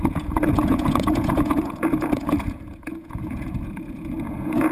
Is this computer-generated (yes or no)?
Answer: yes